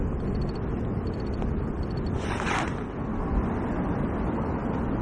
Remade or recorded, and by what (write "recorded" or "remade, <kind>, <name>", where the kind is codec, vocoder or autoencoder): recorded